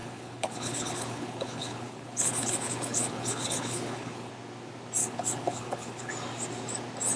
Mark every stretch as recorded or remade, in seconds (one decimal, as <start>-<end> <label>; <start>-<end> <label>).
0.0-4.3 remade; 4.3-5.0 recorded; 5.0-6.1 remade; 6.1-7.2 recorded